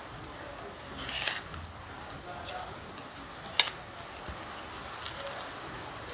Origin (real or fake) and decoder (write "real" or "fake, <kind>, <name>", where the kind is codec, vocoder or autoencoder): real